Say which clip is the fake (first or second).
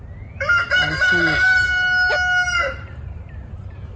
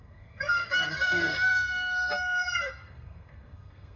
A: second